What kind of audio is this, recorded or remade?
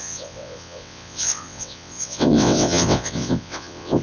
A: remade